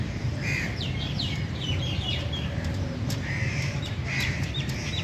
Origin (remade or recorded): remade